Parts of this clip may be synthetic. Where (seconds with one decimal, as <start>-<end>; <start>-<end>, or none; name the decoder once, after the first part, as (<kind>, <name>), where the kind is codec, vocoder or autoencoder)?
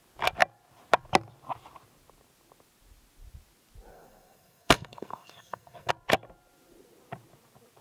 3.9-5.9 (codec, SNAC)